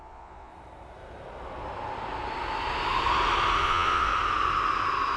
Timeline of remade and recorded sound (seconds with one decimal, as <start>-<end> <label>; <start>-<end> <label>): 0.0-0.5 remade; 0.5-3.6 recorded; 3.6-4.1 remade; 4.1-5.2 recorded